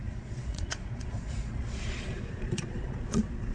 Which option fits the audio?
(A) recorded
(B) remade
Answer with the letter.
B